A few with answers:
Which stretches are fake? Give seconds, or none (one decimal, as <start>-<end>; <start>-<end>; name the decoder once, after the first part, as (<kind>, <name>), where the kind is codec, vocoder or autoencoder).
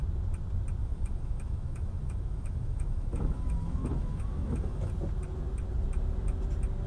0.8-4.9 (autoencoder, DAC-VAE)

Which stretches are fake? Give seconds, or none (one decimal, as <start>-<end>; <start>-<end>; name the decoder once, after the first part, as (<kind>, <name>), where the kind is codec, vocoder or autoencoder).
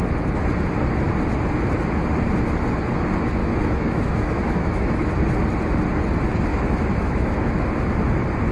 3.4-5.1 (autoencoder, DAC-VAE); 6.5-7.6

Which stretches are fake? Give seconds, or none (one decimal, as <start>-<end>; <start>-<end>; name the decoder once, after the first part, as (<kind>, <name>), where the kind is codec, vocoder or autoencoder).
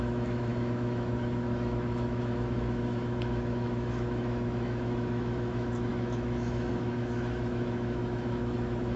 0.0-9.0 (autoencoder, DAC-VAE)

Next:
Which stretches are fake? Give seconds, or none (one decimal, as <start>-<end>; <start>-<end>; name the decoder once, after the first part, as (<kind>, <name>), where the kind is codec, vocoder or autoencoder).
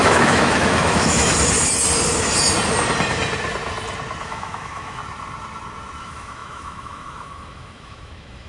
0.0-1.3 (autoencoder, DAC-VAE); 4.2-5.0; 6.0-8.5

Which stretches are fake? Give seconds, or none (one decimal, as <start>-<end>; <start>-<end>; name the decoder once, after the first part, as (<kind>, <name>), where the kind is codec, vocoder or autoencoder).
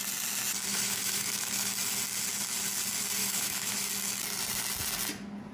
0.7-1.7 (autoencoder, DAC-VAE); 3.2-3.9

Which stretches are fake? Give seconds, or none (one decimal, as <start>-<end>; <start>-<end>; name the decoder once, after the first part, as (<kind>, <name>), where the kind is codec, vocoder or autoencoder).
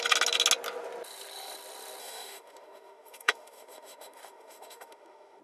2.0-5.4 (autoencoder, DAC-VAE)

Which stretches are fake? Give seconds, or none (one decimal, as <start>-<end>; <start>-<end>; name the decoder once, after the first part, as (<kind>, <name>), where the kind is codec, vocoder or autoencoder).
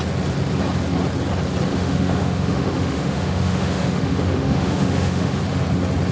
1.7-5.4 (autoencoder, DAC-VAE)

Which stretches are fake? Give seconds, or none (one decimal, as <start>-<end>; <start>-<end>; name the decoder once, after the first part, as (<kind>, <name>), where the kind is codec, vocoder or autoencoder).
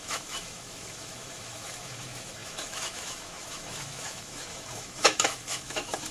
0.0-6.1 (autoencoder, DAC-VAE)